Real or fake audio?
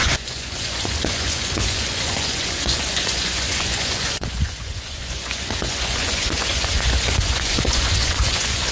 fake